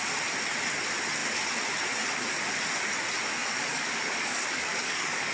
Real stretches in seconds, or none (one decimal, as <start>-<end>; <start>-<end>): 0.0-3.4